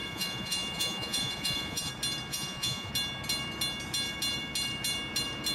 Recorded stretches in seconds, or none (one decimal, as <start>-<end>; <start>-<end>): 1.9-2.3; 2.9-5.5